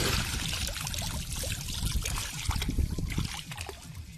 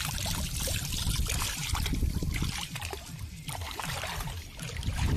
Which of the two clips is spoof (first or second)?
second